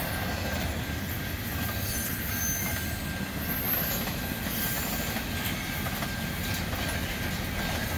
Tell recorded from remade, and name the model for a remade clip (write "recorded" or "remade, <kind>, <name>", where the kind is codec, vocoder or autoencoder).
recorded